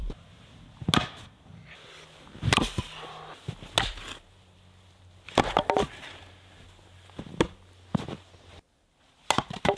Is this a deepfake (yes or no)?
no